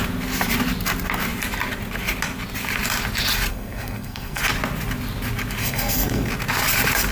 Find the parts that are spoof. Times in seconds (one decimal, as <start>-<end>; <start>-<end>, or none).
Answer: 3.5-4.4; 5.6-6.3

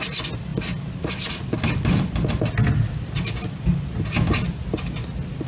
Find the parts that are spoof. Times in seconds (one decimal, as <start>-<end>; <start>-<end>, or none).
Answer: none

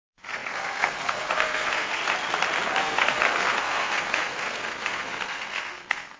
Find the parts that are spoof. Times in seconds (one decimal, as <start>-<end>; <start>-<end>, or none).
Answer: 0.0-2.0; 2.8-6.2